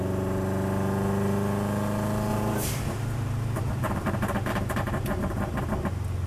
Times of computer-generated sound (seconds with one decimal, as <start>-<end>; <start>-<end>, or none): 2.3-5.6